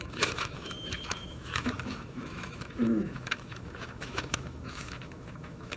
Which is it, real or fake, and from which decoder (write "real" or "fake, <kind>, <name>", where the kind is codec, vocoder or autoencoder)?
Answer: fake, autoencoder, DAC-VAE